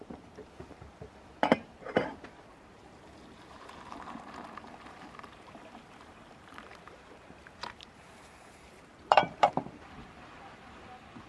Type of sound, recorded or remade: remade